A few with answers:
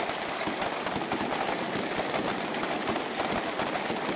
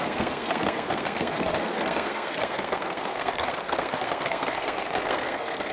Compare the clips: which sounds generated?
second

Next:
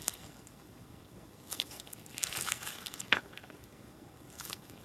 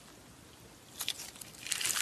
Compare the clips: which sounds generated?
first